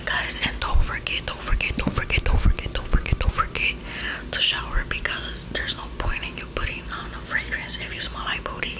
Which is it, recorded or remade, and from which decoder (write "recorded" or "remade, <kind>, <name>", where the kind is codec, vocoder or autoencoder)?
recorded